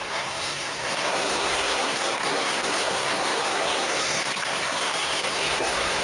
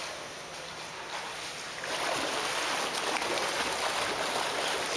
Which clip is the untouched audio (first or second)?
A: second